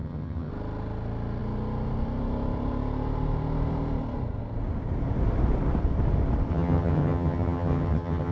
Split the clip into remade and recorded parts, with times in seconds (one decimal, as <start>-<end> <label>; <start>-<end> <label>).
0.0-0.5 remade; 0.5-6.5 recorded; 6.5-8.3 remade